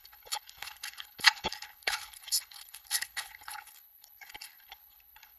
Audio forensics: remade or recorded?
remade